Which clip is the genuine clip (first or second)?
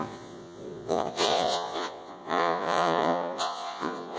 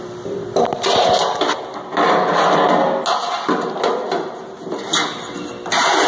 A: second